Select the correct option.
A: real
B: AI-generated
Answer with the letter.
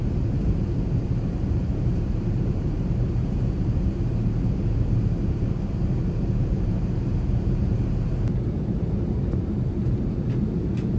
B